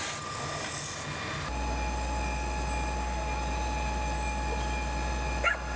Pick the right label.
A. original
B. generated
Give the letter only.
A